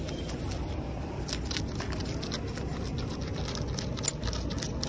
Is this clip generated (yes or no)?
no